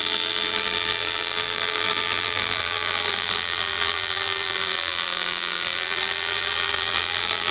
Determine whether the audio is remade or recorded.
remade